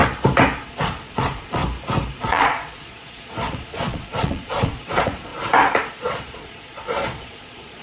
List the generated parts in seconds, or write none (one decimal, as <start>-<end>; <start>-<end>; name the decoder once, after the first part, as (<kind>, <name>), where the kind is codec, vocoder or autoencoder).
0.7-1.6 (vocoder, Vocos); 2.2-5.3; 5.9-7.8